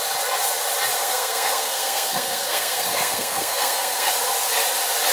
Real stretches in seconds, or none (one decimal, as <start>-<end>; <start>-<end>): 0.0-1.0; 4.1-5.1